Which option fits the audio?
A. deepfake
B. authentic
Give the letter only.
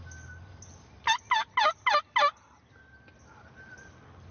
B